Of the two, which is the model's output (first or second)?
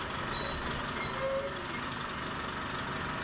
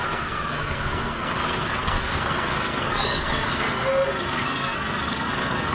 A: second